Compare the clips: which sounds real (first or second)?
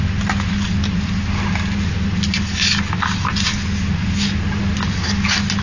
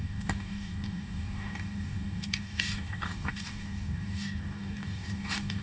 first